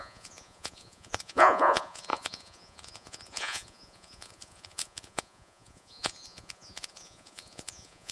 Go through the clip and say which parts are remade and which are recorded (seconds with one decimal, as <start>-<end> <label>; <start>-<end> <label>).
0.0-8.1 remade